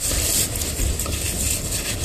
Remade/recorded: recorded